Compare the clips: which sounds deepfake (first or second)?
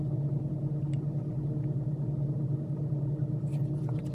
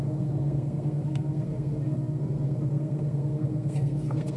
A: second